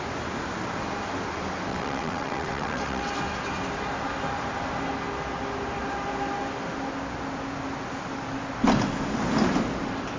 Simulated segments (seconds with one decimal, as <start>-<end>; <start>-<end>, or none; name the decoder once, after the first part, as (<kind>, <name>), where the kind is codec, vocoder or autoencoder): 1.7-3.1 (vocoder, WaveNeXt)